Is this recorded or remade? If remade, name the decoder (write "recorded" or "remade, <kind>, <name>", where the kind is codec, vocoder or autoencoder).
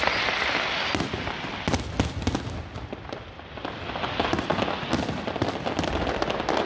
recorded